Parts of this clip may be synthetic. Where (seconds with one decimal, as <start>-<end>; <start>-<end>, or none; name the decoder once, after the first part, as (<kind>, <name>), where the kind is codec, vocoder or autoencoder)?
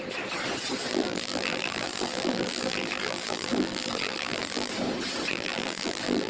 0.9-4.7 (vocoder, BigVGAN v2); 5.3-6.3